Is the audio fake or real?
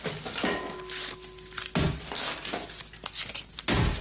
real